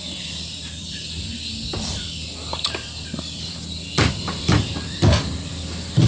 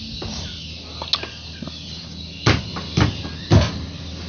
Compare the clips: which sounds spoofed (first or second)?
first